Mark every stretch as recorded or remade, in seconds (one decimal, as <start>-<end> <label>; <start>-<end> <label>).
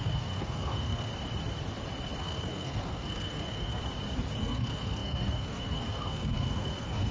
0.0-1.1 remade; 1.1-2.2 recorded; 2.2-3.8 remade; 3.8-4.4 recorded; 4.4-7.1 remade